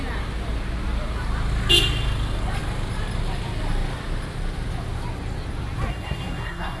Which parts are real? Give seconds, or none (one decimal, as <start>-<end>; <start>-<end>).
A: 0.0-5.9